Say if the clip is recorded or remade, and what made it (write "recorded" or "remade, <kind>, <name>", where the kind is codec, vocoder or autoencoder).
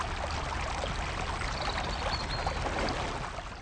recorded